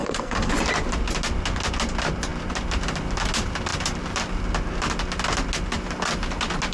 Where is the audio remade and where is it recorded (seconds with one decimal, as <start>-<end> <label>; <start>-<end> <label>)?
0.0-0.5 remade; 0.5-6.7 recorded